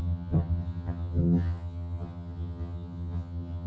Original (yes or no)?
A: no